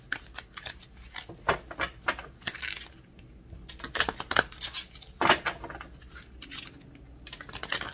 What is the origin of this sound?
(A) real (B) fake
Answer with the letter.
A